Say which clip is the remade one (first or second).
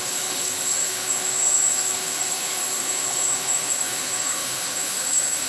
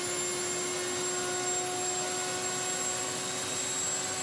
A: first